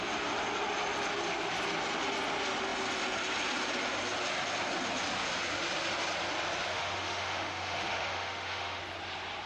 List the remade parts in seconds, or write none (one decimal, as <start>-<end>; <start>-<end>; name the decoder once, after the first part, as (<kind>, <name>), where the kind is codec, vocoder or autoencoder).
6.7-8.8 (autoencoder, DAC-VAE)